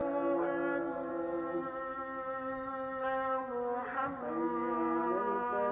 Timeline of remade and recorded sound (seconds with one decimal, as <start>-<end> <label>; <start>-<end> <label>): 0.0-5.7 recorded